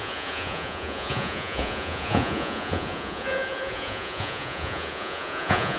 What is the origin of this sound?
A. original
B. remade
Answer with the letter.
B